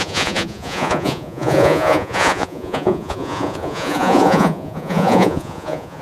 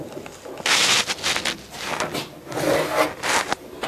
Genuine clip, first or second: second